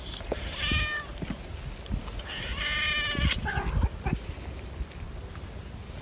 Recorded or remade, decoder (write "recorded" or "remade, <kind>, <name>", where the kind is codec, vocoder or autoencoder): recorded